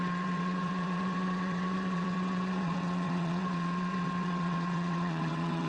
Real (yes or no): no